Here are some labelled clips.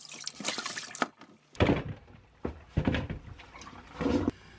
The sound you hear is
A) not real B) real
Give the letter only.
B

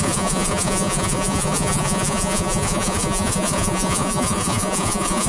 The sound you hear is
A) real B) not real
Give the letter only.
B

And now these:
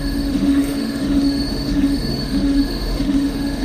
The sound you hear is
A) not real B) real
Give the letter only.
A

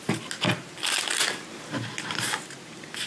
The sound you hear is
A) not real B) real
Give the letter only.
B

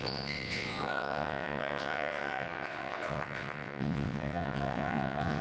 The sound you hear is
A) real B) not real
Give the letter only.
B